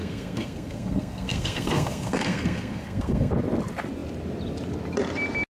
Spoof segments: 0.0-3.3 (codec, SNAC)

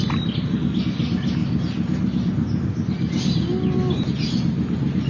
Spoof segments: none

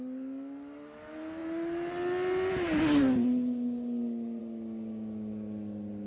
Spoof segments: none

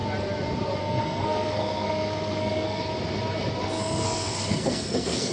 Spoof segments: 0.8-2.8 (codec, SNAC); 3.6-5.3